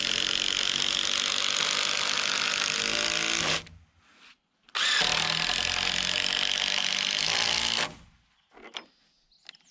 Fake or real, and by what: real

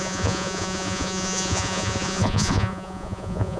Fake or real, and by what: fake, vocoder, Vocos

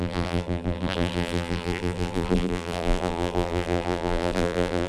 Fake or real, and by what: fake, vocoder, BigVGAN v2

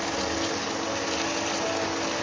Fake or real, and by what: real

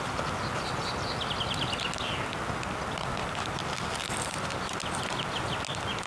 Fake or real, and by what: real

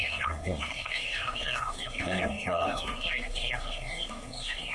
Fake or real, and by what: fake, codec, SNAC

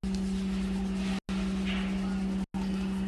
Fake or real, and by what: real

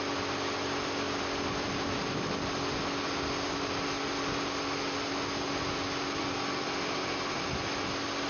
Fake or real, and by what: real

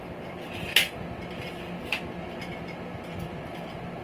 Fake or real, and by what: real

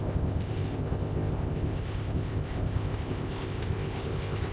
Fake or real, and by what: fake, codec, ZipCodec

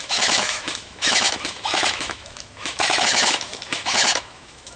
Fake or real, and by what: fake, autoencoder, DAC-VAE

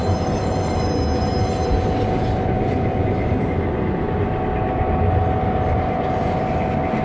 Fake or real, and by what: real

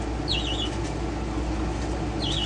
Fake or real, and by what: real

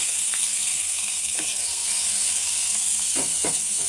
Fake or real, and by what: fake, codec, SNAC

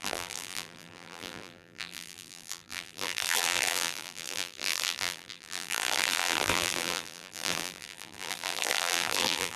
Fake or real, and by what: fake, vocoder, BigVGAN v2